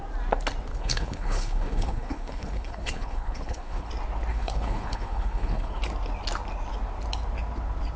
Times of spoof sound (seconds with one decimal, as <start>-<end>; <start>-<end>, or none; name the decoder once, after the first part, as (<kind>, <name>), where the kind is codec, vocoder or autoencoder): 0.7-3.9 (codec, HILCodec); 4.3-5.8